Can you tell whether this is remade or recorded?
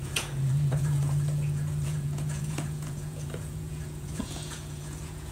remade